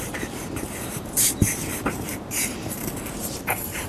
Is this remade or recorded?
remade